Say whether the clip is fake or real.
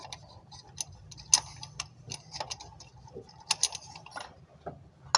real